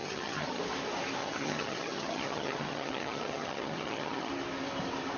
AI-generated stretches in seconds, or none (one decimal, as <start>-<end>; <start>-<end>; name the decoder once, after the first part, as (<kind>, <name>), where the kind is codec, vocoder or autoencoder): 0.0-0.6 (vocoder, HiFi-GAN); 1.2-4.3